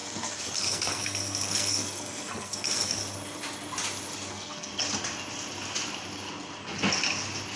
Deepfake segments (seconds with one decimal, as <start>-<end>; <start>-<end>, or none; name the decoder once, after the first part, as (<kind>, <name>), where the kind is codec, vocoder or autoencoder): 0.0-3.0 (codec, SNAC); 4.3-4.7